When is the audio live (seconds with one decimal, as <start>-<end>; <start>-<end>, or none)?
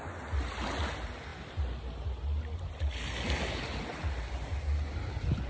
0.0-5.5